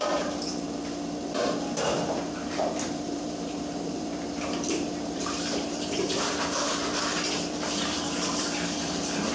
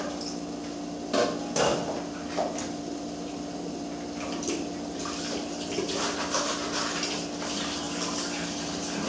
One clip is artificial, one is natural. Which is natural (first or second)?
second